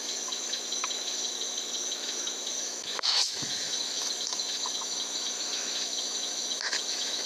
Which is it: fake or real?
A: fake